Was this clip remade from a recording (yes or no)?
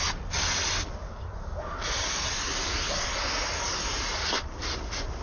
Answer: no